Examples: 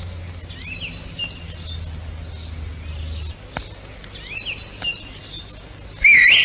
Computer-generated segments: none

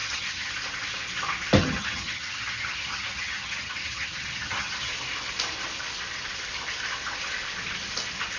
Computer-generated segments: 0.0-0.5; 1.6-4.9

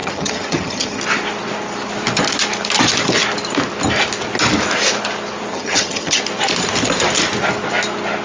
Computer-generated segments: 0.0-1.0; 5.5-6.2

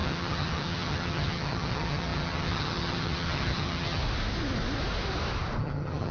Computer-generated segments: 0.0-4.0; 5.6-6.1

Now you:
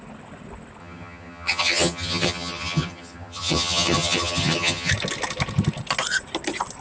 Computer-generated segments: 0.8-4.9

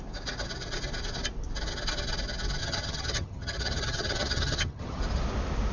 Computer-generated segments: 2.6-5.0

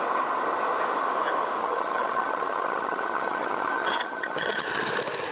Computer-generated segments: 1.6-4.8

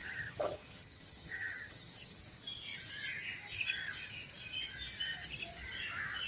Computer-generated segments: 0.0-2.2